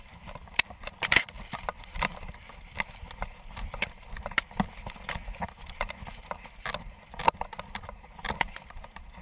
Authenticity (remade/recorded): recorded